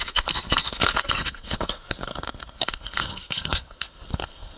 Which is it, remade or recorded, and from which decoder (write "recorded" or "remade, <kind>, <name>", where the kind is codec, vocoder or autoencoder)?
remade, codec, SNAC